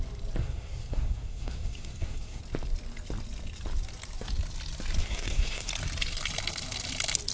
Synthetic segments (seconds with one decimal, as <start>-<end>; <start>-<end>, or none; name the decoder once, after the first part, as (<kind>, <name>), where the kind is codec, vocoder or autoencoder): 0.4-2.4 (codec, SNAC); 5.0-5.7